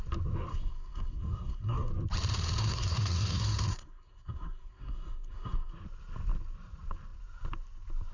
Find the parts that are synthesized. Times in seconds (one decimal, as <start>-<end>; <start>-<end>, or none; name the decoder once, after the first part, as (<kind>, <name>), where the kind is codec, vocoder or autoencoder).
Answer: 0.5-1.9 (codec, SNAC); 2.6-5.7